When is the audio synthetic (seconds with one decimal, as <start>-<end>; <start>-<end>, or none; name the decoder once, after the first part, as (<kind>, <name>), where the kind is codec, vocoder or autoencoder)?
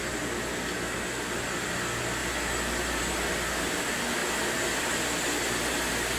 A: none